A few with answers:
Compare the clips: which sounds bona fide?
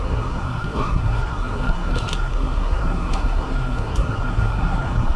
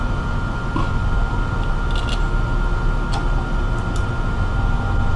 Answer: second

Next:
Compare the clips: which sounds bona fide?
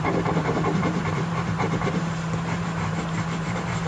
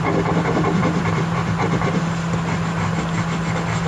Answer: second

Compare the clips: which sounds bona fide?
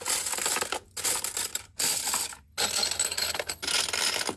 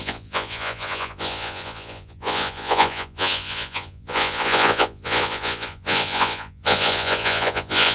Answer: first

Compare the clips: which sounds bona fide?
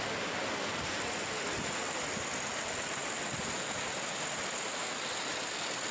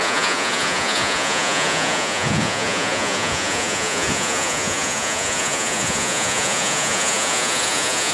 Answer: first